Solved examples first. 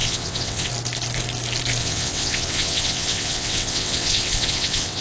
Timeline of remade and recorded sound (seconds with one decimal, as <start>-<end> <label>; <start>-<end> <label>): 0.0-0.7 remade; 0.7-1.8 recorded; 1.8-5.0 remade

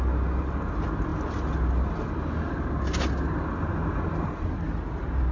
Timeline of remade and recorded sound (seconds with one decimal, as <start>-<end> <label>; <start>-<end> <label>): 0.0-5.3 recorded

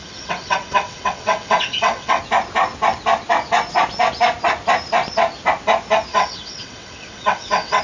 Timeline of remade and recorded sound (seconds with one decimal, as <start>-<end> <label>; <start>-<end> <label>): 0.0-2.2 remade; 2.2-6.1 recorded; 6.1-7.8 remade

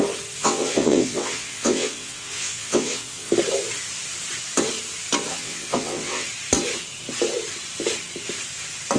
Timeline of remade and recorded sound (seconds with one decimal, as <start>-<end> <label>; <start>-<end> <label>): 0.0-0.4 recorded; 0.4-3.3 remade; 3.3-5.3 recorded; 5.3-6.3 remade; 6.3-9.0 recorded